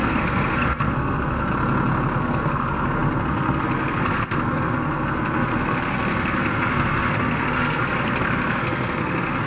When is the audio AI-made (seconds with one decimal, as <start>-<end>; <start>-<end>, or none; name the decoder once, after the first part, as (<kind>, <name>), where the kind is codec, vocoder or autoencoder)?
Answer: 0.0-1.5 (codec, SNAC); 2.2-9.5